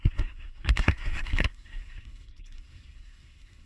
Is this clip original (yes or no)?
no